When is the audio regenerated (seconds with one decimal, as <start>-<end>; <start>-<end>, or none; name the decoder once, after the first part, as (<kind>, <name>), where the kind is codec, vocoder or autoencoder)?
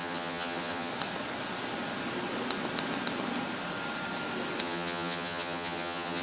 0.0-0.9 (vocoder, HiFi-GAN); 4.6-6.2